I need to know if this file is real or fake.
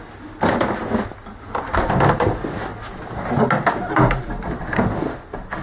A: real